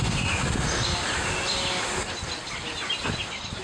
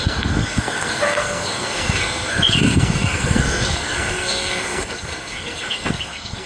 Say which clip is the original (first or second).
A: first